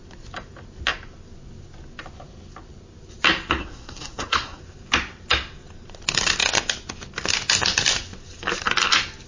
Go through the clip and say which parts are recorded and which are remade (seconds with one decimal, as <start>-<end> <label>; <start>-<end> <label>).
0.0-3.6 recorded; 3.6-4.6 remade; 4.6-9.3 recorded

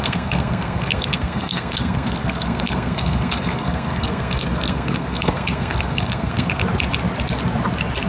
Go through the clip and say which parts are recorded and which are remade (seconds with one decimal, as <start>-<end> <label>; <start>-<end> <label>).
0.0-6.6 remade; 6.6-8.1 recorded

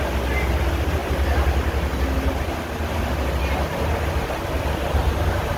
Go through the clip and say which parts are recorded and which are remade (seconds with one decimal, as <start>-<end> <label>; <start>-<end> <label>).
0.0-5.6 recorded

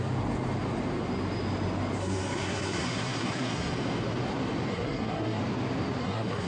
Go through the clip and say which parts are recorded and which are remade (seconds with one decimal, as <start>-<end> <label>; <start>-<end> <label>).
0.0-2.0 recorded; 2.0-3.7 remade; 3.7-4.7 recorded; 4.7-5.4 remade; 5.4-6.0 recorded; 6.0-6.5 remade

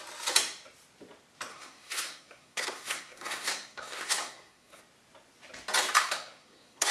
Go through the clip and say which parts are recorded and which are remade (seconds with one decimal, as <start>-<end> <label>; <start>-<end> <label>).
0.0-1.5 recorded; 1.5-4.8 remade; 4.8-6.0 recorded; 6.0-6.9 remade

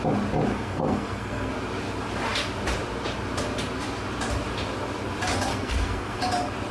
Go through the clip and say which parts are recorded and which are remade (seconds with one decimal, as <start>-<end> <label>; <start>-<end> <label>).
0.0-0.5 recorded; 0.5-1.5 remade; 1.5-5.5 recorded; 5.5-6.2 remade; 6.2-6.7 recorded

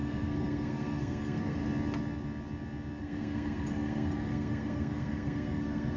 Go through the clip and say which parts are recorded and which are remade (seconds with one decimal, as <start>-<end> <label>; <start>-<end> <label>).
0.0-1.6 remade; 1.6-3.0 recorded; 3.0-6.0 remade